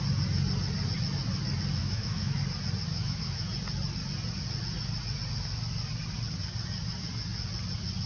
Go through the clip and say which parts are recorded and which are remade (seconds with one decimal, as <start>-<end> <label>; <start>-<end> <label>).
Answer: 0.0-1.8 recorded; 1.8-2.4 remade; 2.4-2.9 recorded; 2.9-3.5 remade; 3.5-8.1 recorded